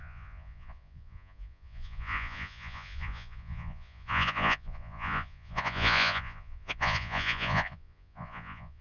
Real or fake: fake